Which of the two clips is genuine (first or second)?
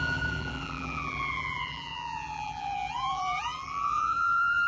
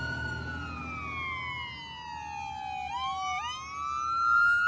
second